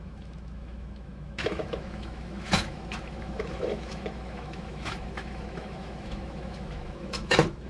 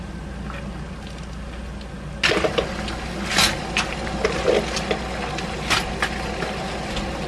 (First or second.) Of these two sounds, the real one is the second